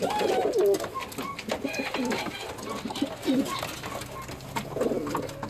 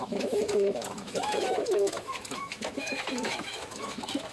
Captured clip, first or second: first